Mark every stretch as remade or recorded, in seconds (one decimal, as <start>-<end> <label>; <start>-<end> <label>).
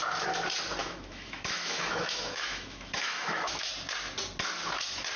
0.0-0.8 recorded; 0.8-3.7 remade; 3.7-5.2 recorded